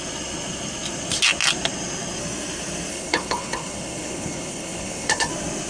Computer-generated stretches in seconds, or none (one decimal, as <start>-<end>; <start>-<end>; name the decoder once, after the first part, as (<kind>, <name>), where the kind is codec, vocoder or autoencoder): 2.9-5.3 (codec, HILCodec)